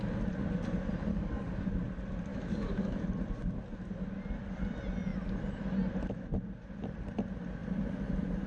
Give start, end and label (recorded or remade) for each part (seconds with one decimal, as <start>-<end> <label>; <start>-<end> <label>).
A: 0.0-1.1 recorded; 1.1-1.7 remade; 1.7-2.3 recorded; 2.3-3.1 remade; 3.1-8.5 recorded